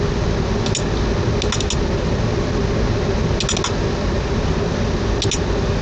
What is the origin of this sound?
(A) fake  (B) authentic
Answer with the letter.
B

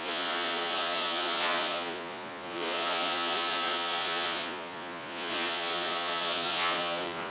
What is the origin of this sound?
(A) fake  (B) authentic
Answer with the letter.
A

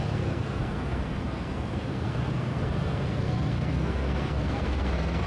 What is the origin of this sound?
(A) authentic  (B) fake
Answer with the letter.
B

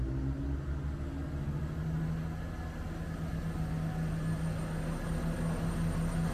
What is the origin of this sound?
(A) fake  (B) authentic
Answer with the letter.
B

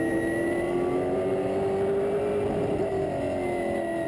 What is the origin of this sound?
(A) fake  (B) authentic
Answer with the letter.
B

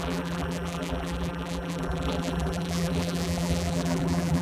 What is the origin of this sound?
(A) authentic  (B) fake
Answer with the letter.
B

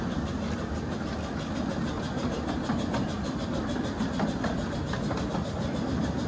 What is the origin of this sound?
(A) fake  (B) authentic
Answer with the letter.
B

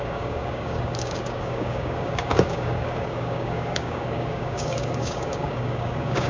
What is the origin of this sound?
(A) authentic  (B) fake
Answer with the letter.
B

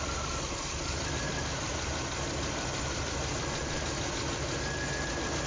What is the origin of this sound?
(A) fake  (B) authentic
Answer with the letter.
B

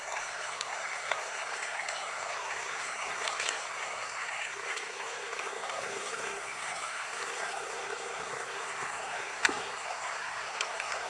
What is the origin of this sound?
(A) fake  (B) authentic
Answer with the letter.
A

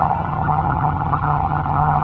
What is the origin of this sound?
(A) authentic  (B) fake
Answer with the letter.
B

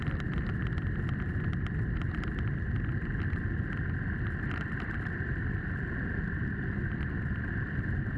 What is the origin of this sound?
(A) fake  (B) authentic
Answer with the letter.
B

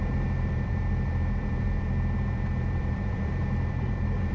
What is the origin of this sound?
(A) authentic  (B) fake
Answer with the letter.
B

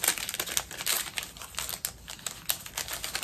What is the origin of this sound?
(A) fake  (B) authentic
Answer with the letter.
B